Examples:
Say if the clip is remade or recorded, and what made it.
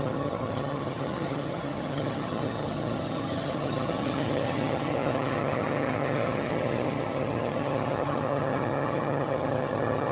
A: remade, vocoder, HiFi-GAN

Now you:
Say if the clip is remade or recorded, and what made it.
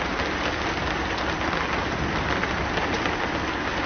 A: recorded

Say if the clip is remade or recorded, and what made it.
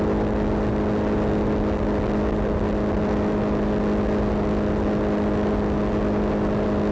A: recorded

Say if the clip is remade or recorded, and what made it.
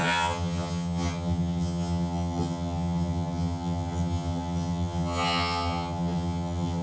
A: remade, vocoder, HiFi-GAN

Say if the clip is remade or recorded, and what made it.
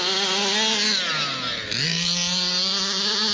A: recorded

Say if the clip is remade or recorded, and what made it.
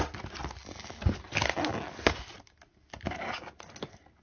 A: recorded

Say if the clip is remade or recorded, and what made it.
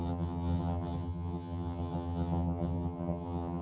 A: remade, vocoder, HiFi-GAN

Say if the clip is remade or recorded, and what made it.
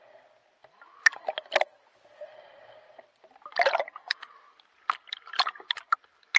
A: recorded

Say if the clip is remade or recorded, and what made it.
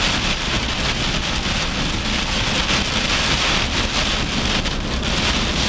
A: recorded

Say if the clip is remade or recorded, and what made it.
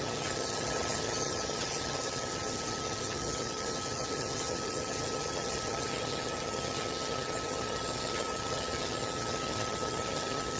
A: remade, vocoder, HiFi-GAN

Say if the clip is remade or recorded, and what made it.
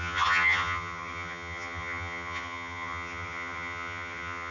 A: remade, vocoder, HiFi-GAN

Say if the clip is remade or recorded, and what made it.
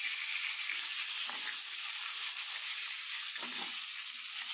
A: recorded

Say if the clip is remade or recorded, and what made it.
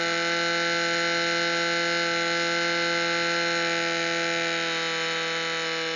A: recorded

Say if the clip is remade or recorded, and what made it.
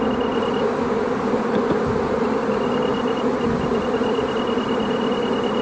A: recorded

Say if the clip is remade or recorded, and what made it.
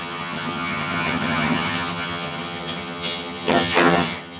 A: remade, vocoder, HiFi-GAN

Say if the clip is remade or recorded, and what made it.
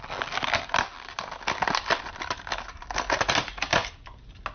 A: recorded